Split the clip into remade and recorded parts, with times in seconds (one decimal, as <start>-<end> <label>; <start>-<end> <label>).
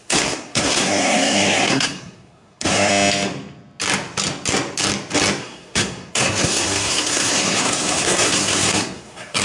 0.0-2.9 remade; 2.9-5.4 recorded; 5.4-9.4 remade